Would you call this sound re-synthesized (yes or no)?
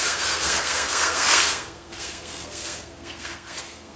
yes